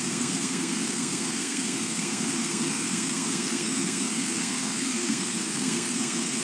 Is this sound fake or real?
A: fake